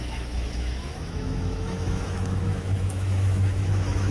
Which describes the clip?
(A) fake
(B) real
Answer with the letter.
A